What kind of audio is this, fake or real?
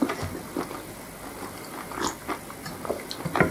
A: real